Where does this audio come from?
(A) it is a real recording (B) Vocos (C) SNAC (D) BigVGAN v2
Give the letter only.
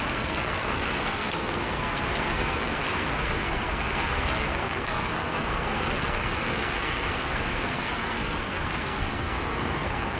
C